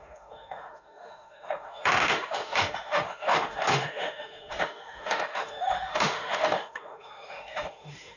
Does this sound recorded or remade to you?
remade